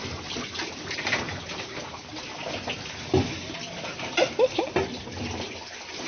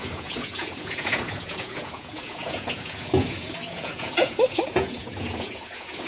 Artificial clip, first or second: second